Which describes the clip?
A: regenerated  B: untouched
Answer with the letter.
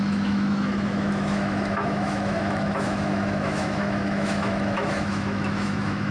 A